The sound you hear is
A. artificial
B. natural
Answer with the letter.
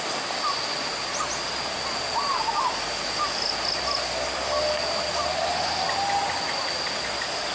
B